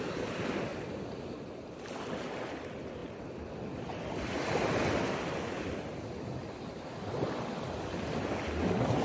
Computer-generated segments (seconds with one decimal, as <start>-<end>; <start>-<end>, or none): none